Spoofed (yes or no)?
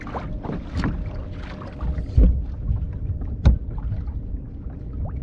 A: no